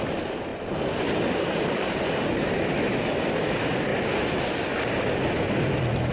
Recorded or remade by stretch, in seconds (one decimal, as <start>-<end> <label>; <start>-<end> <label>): 0.0-0.5 remade; 0.5-3.1 recorded; 3.1-3.9 remade; 3.9-4.9 recorded; 4.9-6.1 remade